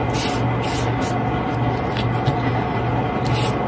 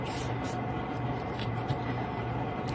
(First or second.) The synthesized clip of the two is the second